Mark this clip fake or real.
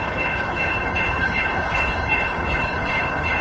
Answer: fake